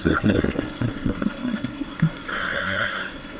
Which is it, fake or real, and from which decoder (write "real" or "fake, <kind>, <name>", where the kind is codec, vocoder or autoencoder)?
fake, codec, SNAC